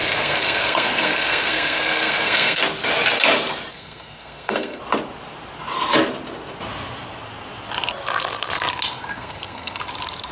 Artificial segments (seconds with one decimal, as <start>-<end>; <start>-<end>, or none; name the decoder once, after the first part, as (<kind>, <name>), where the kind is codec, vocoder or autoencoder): 0.0-2.6 (codec, SNAC); 3.7-4.8; 9.1-9.8